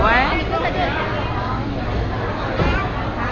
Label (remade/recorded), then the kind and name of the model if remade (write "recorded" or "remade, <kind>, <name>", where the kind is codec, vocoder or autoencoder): recorded